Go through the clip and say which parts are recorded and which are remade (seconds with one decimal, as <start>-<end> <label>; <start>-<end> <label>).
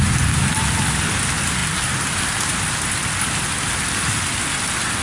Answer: 0.0-5.0 recorded